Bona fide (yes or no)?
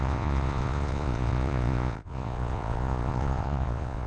no